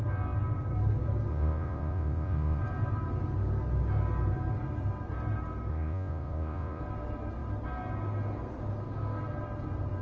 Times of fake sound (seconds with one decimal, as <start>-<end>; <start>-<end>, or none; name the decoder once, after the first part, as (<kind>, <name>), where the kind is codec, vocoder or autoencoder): 1.3-2.6 (vocoder, Vocos); 5.7-6.8